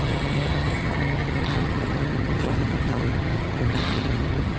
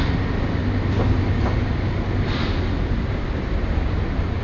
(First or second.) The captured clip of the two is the second